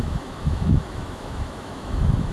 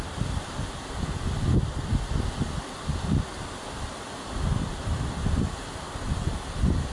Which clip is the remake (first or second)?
first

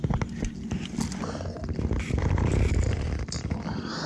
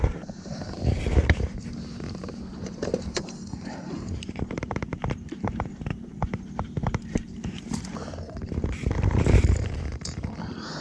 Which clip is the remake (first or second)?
second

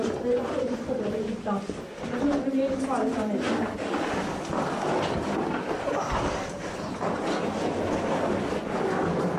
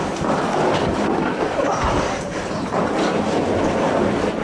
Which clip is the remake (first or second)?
second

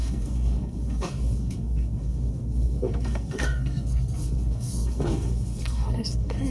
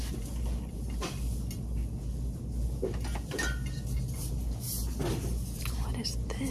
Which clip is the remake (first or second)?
first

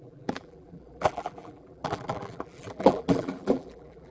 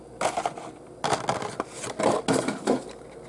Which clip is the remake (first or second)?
first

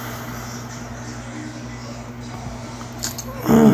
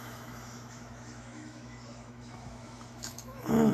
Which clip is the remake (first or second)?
second